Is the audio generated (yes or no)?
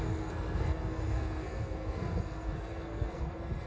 yes